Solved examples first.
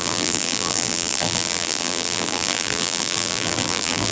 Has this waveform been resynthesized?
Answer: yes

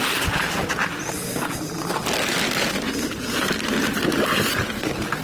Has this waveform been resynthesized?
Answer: no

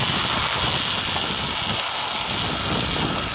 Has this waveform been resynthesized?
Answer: no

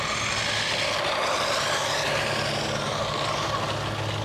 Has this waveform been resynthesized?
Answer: no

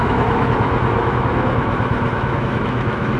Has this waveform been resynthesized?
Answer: yes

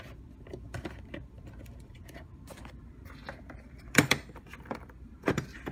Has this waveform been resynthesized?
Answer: yes